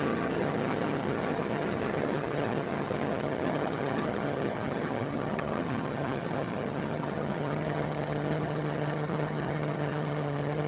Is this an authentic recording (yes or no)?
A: no